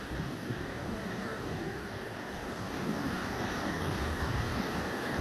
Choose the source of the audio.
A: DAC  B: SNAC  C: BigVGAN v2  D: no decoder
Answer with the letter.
A